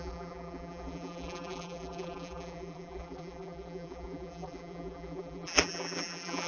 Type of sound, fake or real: fake